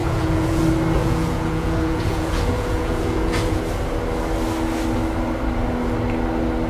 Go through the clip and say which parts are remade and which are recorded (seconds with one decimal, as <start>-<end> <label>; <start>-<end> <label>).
0.0-0.6 remade; 0.6-1.0 recorded; 1.0-3.6 remade; 3.6-6.7 recorded